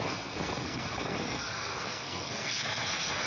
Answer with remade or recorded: remade